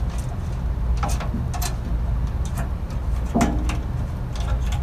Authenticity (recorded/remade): recorded